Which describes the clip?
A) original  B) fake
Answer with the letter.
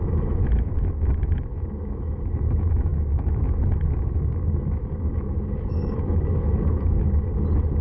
B